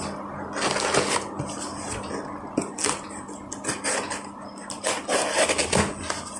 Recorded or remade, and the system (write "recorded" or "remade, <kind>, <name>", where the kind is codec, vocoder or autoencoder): recorded